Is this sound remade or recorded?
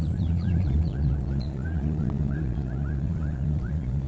remade